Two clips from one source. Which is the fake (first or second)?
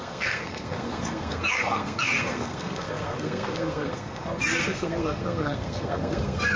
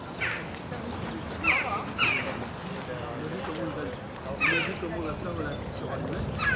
first